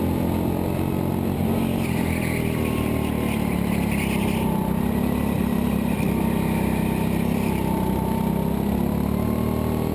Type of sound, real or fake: real